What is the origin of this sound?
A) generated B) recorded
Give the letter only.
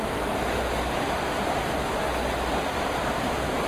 B